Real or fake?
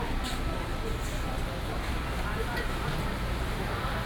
real